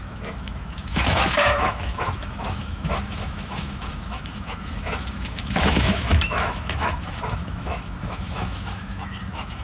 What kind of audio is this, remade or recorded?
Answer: remade